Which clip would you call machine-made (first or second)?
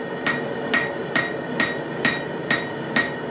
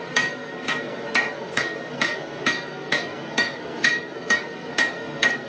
second